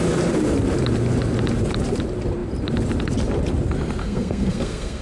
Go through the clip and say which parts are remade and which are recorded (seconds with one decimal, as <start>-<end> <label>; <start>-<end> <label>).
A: 0.0-4.0 recorded; 4.0-5.0 remade